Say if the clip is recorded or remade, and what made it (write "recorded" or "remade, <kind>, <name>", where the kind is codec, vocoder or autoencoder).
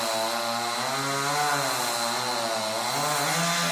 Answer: recorded